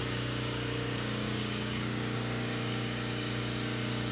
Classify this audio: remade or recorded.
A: remade